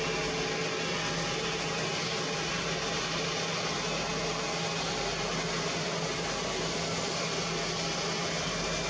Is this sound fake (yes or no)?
no